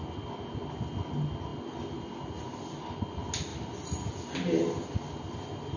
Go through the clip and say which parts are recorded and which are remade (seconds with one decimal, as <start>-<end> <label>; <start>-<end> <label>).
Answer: 0.0-5.8 recorded